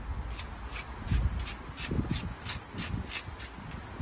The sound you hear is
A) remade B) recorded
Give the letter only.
B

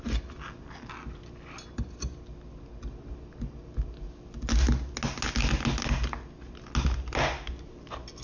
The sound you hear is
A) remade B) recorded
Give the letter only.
B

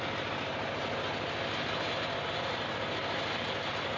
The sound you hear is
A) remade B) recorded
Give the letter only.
B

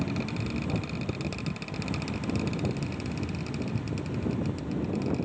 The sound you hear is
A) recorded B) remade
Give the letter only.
A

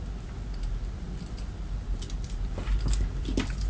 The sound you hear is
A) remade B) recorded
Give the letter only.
B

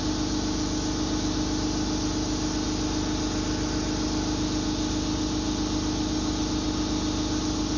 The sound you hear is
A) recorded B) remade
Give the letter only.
A